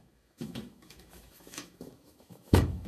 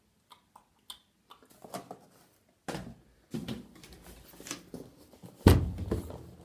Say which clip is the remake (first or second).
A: first